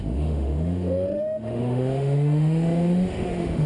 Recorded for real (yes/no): no